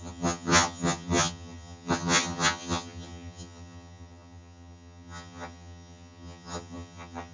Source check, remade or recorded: remade